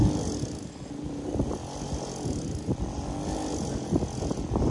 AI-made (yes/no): no